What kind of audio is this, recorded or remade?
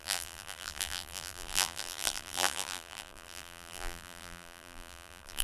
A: remade